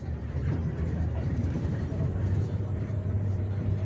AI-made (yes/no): yes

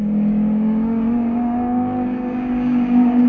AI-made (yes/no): yes